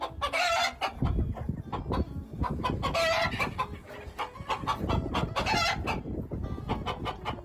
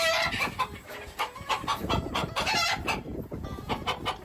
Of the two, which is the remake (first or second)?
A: second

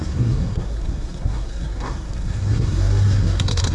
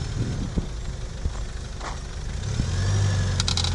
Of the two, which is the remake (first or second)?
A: first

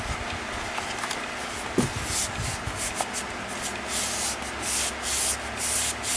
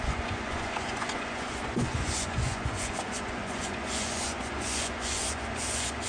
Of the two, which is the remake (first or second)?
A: second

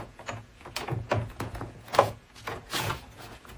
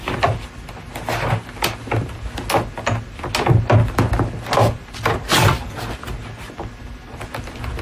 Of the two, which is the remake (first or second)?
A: first